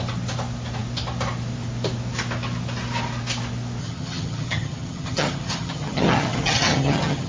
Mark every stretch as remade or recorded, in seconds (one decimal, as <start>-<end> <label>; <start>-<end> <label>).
0.0-3.8 recorded; 3.8-7.3 remade